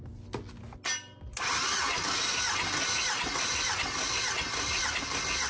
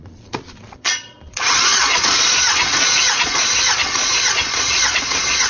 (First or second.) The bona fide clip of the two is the first